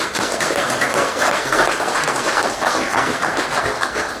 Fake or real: fake